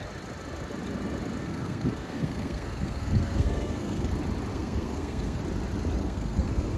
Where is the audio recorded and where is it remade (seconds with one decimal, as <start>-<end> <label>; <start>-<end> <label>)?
0.0-1.4 recorded; 1.4-4.1 remade; 4.1-4.5 recorded; 4.5-5.4 remade; 5.4-6.0 recorded; 6.0-6.8 remade